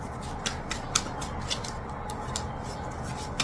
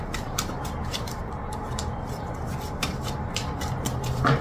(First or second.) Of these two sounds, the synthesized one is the second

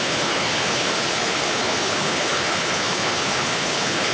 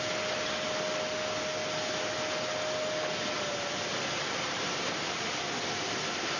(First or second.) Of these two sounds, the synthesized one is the first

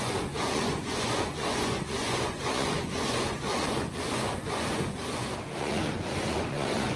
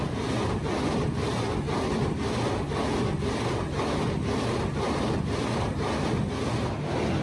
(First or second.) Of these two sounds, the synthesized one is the first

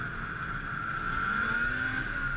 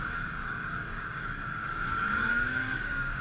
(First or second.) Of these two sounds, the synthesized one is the second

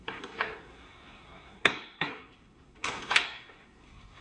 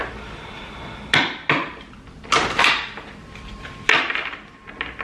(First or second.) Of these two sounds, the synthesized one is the first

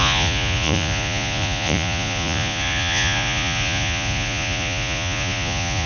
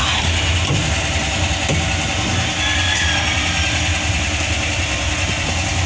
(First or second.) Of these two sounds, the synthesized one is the first